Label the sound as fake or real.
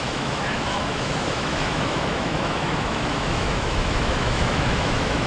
fake